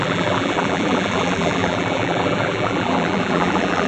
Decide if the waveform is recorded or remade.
remade